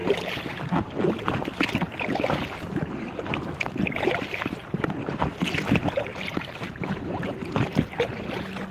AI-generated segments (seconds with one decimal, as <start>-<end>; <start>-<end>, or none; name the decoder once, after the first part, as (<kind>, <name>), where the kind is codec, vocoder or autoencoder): 0.0-0.7 (vocoder, BigVGAN v2); 6.1-7.3